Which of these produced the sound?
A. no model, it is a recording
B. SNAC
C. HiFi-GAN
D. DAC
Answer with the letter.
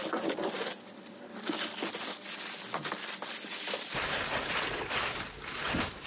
A